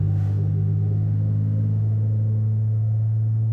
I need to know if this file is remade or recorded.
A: remade